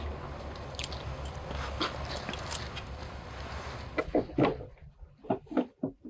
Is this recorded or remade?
recorded